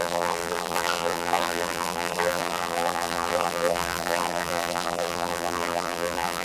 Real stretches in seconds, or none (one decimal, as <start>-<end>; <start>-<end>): none